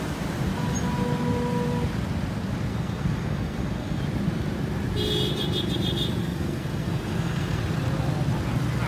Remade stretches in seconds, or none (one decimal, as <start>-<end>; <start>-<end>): 2.7-4.0; 6.2-7.6